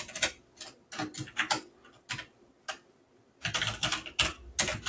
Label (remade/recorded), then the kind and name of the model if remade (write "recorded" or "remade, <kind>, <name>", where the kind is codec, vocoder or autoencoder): recorded